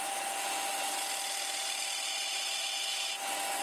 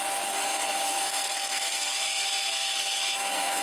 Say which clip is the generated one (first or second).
second